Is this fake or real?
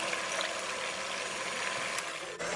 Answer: real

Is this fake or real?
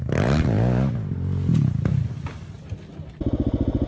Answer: real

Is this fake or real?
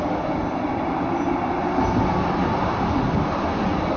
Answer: real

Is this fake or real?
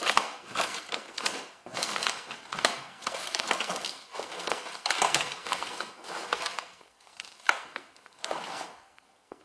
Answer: fake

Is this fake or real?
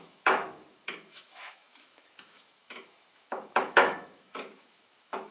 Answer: fake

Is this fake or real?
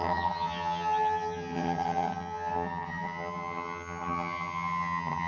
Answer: fake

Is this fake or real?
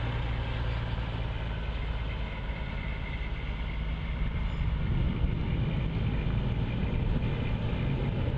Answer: real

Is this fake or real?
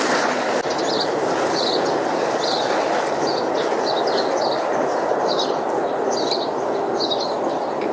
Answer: real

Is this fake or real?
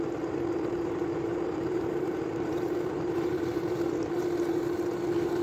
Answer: fake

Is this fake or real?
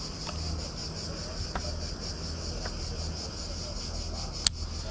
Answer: real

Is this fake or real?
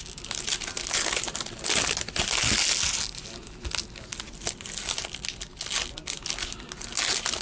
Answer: real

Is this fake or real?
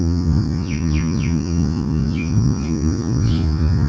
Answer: fake